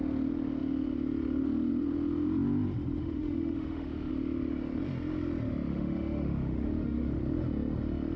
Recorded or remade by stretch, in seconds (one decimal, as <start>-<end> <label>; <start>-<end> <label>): 0.0-3.0 recorded; 3.0-4.1 remade; 4.1-5.7 recorded; 5.7-7.2 remade; 7.2-8.2 recorded